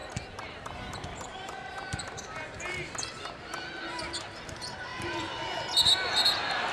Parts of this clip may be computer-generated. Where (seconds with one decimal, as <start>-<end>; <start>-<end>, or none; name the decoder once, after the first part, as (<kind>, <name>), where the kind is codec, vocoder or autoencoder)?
0.0-4.0 (vocoder, BigVGAN v2); 4.9-6.7